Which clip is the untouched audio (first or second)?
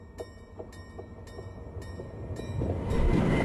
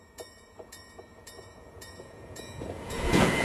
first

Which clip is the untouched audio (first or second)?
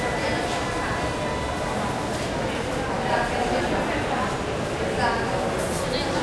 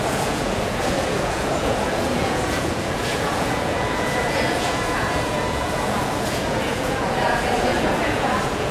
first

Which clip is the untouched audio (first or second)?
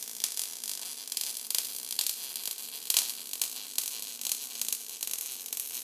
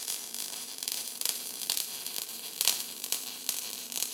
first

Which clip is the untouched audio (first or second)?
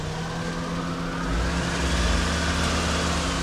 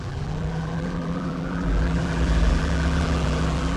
first